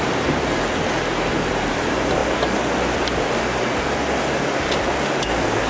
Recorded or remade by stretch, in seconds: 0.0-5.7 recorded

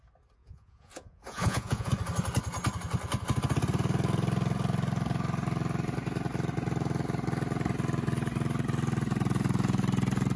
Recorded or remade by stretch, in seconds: 0.0-0.4 recorded; 0.4-1.9 remade; 1.9-10.4 recorded

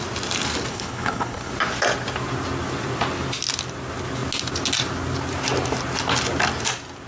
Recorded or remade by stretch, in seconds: 0.0-0.7 recorded; 0.7-1.5 remade; 1.5-7.1 recorded

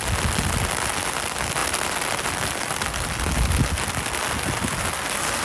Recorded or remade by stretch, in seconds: 0.0-5.4 recorded

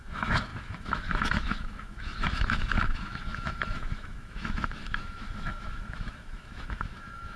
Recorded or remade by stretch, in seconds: 0.0-7.4 remade

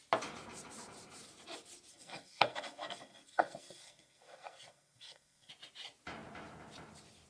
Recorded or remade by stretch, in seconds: 0.0-1.9 recorded; 1.9-5.5 remade; 5.5-7.3 recorded

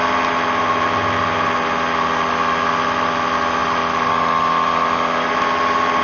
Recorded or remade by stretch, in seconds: 0.0-3.6 recorded; 3.6-6.0 remade